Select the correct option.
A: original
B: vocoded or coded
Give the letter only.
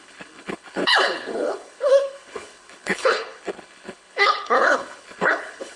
B